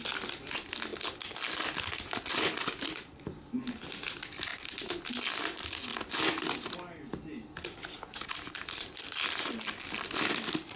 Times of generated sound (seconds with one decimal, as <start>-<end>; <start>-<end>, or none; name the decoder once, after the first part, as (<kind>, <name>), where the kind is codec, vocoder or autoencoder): none